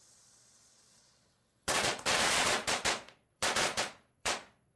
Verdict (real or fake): fake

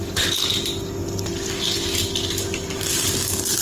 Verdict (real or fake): real